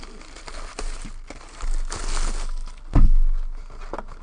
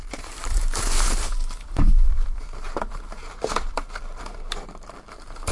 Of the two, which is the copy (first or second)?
second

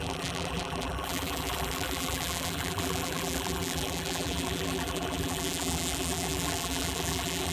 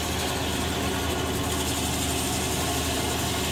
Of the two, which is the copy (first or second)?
first